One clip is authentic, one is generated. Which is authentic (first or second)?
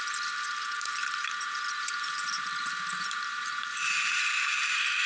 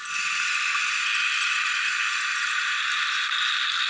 second